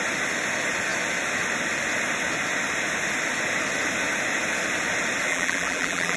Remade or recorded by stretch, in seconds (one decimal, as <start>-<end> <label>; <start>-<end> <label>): 0.0-5.3 recorded; 5.3-6.2 remade